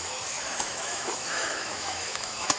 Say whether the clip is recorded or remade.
remade